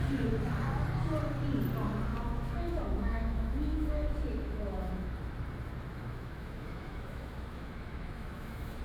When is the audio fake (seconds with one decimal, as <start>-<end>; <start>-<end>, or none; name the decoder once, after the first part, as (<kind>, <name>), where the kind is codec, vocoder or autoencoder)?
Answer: 2.1-5.1 (autoencoder, DAC-VAE); 5.9-8.8